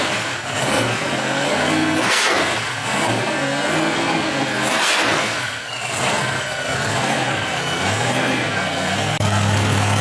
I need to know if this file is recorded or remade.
remade